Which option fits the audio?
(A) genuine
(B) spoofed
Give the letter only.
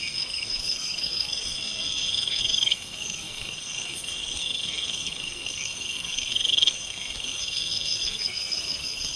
B